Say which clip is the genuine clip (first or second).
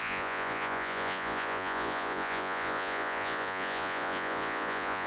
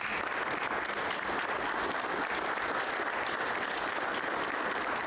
second